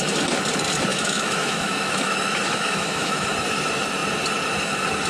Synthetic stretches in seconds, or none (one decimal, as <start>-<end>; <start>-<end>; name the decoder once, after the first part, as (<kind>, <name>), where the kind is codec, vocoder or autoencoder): 0.9-3.3 (autoencoder, DAC-VAE)